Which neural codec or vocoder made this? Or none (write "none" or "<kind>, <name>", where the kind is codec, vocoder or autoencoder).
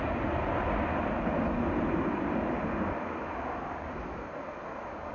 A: none